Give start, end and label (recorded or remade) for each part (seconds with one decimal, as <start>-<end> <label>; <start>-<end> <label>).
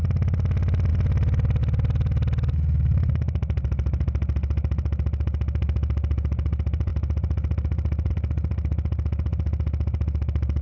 0.0-10.6 recorded